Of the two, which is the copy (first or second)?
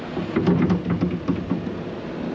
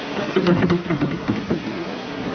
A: second